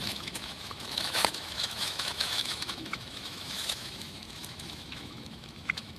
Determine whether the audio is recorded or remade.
remade